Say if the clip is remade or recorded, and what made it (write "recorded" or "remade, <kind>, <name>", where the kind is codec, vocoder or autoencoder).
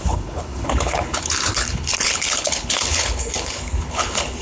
remade, codec, HILCodec